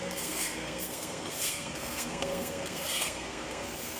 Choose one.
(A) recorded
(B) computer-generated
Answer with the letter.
B